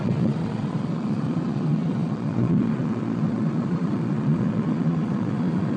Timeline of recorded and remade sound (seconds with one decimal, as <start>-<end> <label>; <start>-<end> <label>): 0.0-5.8 remade